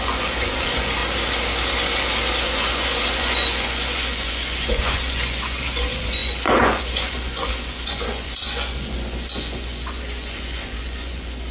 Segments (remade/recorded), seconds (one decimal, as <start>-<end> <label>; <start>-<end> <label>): 0.0-1.0 remade; 1.0-2.4 recorded; 2.4-11.5 remade